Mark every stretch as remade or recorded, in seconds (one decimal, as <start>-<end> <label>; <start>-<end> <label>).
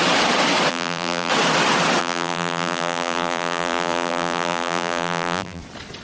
0.0-0.7 recorded; 0.7-1.3 remade; 1.3-2.0 recorded; 2.0-5.6 remade; 5.6-6.0 recorded